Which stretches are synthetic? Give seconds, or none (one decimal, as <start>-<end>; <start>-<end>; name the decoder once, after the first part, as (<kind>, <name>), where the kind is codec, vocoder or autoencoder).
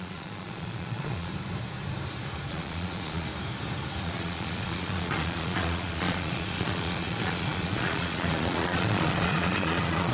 0.0-1.3 (vocoder, Vocos); 2.5-3.3; 4.0-10.1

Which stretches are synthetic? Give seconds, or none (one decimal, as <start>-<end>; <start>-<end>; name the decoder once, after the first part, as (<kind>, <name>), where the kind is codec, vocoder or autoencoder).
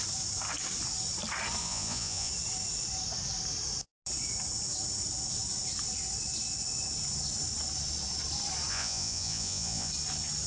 1.6-2.3 (vocoder, Vocos); 8.7-9.9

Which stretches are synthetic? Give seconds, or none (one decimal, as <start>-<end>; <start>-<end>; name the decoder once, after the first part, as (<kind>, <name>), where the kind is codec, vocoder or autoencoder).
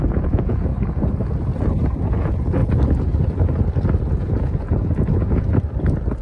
0.0-0.7 (vocoder, Vocos); 2.1-2.6; 4.1-5.5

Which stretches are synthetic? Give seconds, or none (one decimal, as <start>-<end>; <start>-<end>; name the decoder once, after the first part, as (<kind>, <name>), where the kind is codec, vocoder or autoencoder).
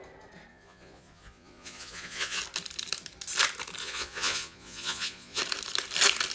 0.5-2.4 (vocoder, Vocos); 3.8-5.4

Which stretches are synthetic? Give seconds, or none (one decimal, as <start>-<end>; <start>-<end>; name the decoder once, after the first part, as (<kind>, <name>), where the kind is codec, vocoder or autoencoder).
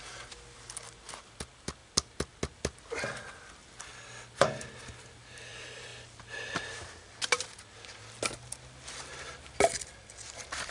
none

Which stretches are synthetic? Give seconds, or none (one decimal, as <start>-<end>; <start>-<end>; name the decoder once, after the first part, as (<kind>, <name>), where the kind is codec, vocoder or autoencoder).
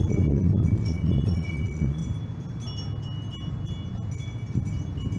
0.0-2.0 (vocoder, Vocos)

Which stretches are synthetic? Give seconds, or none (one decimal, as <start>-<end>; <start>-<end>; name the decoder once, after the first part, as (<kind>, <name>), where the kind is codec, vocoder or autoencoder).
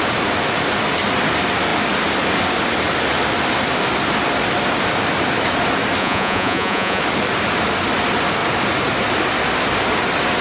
6.0-7.0 (vocoder, Vocos)